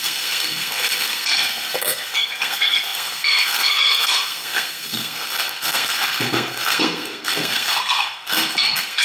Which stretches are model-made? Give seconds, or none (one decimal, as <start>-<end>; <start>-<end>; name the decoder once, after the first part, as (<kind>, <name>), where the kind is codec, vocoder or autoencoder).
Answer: 0.0-9.0 (codec, SNAC)